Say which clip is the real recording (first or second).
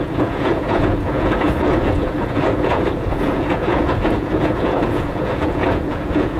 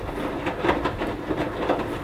second